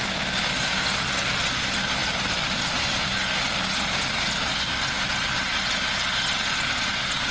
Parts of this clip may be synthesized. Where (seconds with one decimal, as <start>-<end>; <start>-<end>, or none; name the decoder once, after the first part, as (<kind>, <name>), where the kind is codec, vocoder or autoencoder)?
none